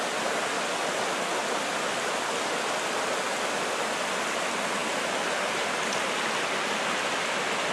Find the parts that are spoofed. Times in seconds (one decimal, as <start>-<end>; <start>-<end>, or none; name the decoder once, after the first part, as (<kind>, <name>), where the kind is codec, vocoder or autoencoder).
none